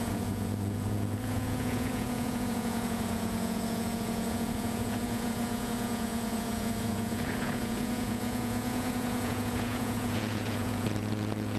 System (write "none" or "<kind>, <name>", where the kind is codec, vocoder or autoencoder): vocoder, Vocos